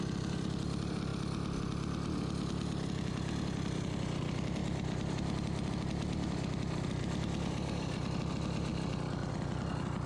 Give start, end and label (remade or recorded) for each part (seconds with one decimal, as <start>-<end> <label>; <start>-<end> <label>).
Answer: 0.0-1.1 remade; 1.1-2.5 recorded; 2.5-8.7 remade; 8.7-9.3 recorded; 9.3-10.1 remade